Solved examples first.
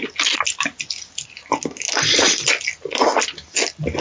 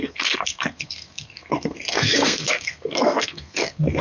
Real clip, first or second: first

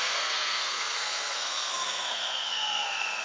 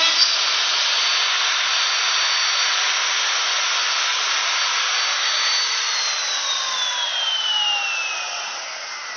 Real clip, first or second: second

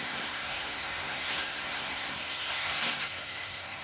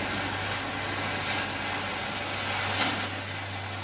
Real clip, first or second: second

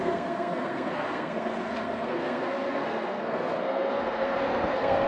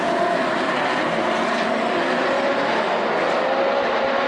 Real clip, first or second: second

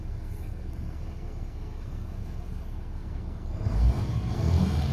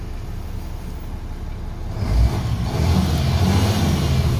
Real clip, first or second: second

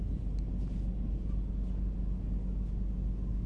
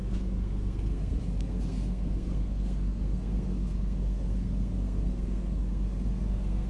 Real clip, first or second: first